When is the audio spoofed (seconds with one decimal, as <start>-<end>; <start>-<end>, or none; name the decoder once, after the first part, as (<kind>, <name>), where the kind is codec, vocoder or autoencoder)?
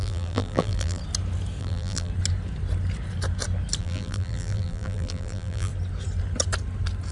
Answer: 0.0-1.0 (vocoder, BigVGAN v2); 1.6-2.1; 3.8-5.7